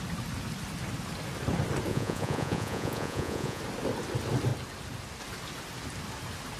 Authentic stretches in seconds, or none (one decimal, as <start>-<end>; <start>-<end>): 0.0-1.9; 3.6-6.6